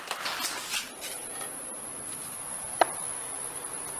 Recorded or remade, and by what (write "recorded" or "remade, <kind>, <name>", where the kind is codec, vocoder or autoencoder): recorded